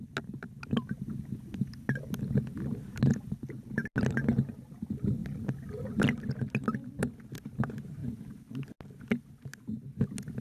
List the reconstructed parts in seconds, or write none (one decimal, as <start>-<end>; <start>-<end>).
none